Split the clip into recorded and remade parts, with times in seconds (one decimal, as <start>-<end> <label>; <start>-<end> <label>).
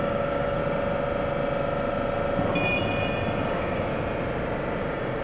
0.0-0.6 remade; 0.6-3.5 recorded; 3.5-3.9 remade; 3.9-4.8 recorded; 4.8-5.2 remade